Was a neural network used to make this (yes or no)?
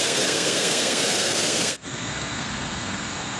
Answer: yes